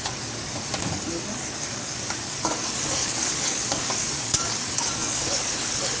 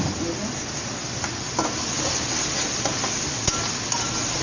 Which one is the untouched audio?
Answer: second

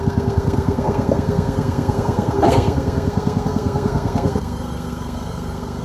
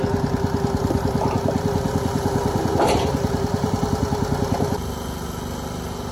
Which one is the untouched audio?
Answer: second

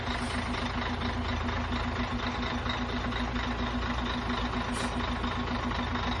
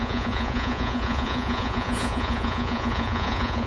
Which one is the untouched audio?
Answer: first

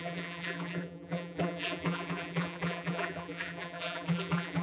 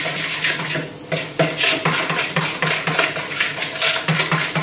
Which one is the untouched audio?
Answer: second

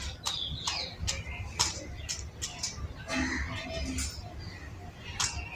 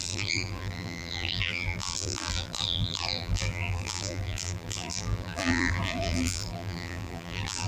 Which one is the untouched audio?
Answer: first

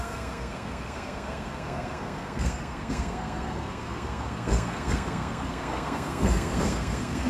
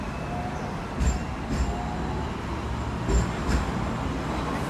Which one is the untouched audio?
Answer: second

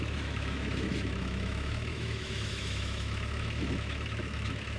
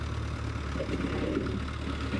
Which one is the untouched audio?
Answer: second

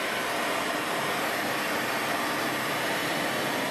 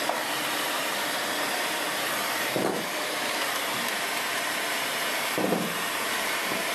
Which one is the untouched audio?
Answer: first